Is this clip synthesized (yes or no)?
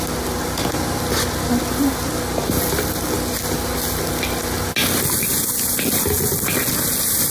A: no